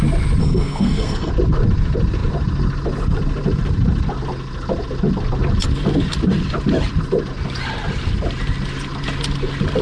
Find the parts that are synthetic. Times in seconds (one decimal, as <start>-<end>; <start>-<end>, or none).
0.4-1.3